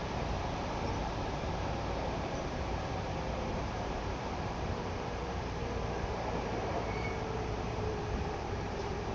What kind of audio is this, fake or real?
fake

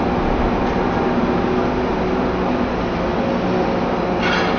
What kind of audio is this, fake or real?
real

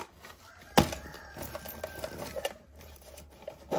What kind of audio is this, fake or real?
real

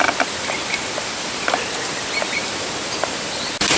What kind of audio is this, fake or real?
real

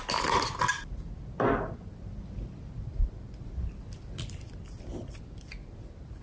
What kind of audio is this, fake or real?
real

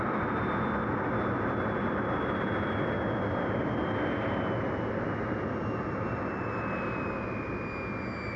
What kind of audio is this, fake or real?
real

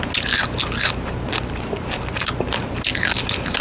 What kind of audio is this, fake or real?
real